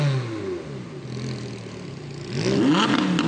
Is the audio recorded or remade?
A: recorded